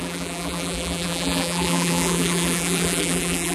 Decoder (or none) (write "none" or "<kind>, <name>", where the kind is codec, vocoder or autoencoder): vocoder, BigVGAN v2